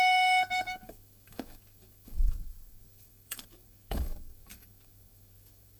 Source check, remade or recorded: remade